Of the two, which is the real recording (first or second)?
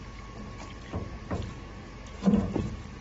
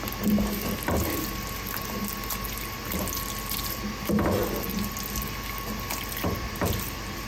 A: second